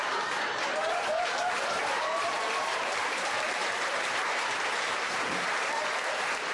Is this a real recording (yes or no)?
no